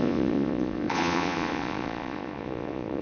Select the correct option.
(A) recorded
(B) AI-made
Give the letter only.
B